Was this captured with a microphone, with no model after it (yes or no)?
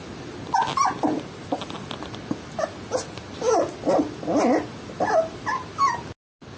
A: yes